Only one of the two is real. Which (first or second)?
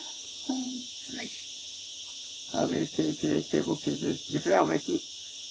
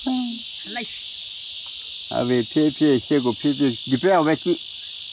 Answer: second